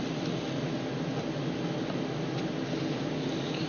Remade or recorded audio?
recorded